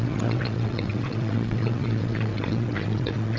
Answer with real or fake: fake